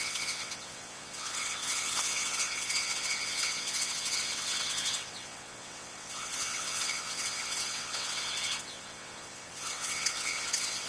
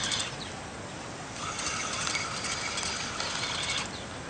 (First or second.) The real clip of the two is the second